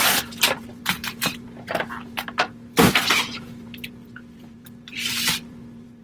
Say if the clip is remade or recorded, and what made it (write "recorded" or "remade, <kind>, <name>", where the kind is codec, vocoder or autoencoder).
remade, vocoder, BigVGAN v2